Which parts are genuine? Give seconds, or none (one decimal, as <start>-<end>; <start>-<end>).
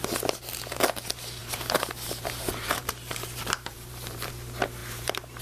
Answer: 0.0-1.4; 4.3-4.8